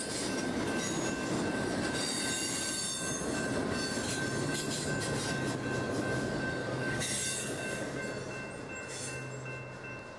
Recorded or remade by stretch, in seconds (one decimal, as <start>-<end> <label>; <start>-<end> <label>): 0.0-6.6 recorded; 6.6-8.0 remade; 8.0-10.2 recorded